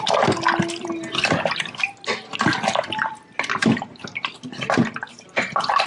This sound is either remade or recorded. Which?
recorded